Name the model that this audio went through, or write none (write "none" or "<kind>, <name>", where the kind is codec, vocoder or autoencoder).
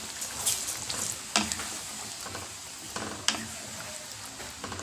none